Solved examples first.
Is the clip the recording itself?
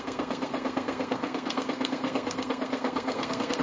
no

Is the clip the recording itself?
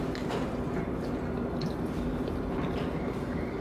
yes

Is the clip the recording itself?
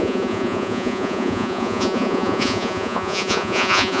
no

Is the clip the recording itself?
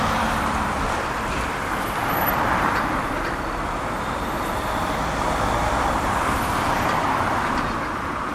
no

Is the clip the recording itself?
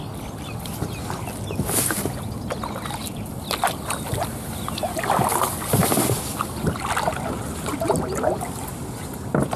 yes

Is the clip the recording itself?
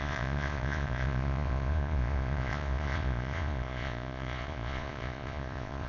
no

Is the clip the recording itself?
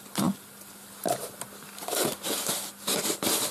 yes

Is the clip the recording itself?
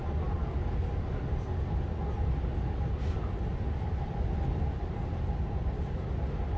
yes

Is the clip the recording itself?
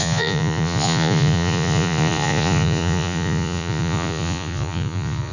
no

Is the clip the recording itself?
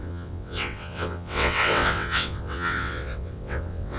no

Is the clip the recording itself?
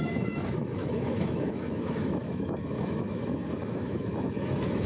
no